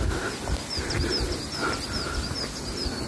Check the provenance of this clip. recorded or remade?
recorded